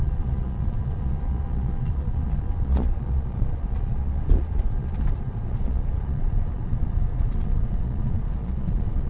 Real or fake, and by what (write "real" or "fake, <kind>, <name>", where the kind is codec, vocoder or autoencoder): fake, vocoder, Vocos